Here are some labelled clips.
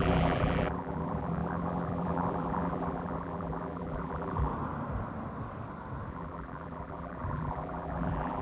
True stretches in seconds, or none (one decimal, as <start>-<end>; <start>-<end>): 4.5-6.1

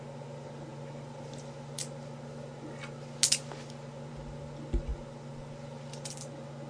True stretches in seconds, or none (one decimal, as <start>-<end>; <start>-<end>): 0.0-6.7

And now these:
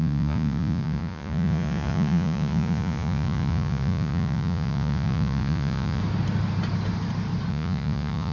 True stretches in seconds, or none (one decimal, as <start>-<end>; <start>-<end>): 6.0-7.5

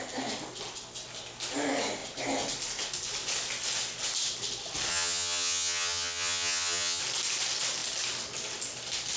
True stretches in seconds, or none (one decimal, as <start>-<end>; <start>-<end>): 0.0-4.9; 7.0-9.2

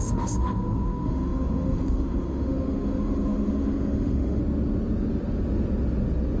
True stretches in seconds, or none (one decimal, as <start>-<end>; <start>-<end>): 4.4-6.4

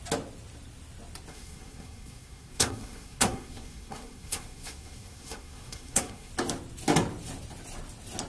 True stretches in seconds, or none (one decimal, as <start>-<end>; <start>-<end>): 0.0-1.3; 6.3-8.3

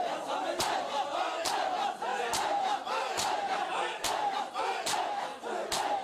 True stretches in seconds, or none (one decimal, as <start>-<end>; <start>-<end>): 0.0-2.1; 4.1-6.0

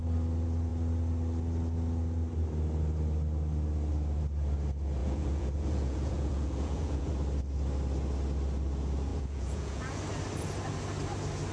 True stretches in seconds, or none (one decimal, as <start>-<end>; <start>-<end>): 0.0-5.0; 7.1-9.1; 10.0-11.5